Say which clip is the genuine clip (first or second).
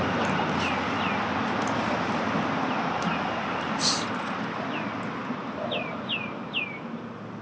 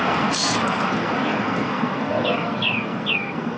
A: first